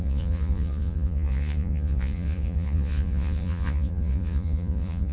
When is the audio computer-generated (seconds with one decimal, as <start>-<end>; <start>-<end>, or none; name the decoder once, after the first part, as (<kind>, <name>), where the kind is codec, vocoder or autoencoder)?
0.0-5.1 (vocoder, Vocos)